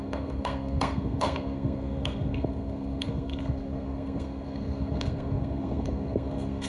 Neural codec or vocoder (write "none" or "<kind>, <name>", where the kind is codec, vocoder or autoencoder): codec, SNAC